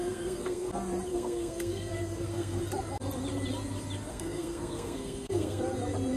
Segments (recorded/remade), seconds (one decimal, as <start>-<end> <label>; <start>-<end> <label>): 0.0-0.7 remade; 0.7-1.1 recorded; 1.1-2.6 remade; 2.6-4.1 recorded; 4.1-5.6 remade; 5.6-6.2 recorded